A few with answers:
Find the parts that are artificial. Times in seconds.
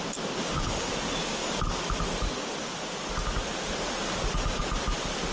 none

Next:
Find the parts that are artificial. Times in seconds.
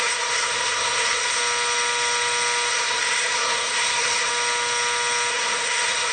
0.0-1.4 (codec, SNAC); 2.7-4.3; 5.3-6.1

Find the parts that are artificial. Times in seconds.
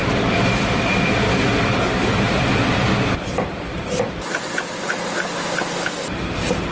0.0-3.0 (vocoder, BigVGAN v2)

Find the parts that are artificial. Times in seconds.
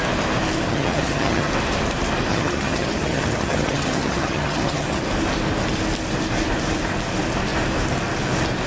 0.7-1.5 (vocoder, HiFi-GAN); 2.3-5.0